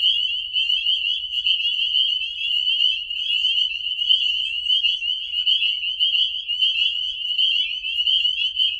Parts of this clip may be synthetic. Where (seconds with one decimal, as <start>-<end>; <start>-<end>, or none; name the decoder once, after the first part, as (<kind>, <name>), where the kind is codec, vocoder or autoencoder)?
none